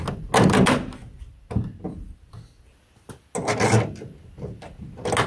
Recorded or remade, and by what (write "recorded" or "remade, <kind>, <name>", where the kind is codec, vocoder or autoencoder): recorded